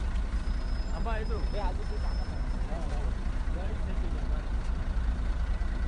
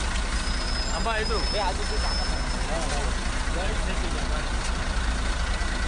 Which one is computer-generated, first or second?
first